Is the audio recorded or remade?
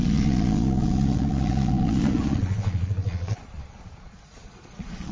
remade